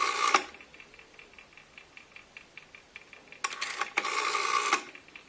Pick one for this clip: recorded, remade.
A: recorded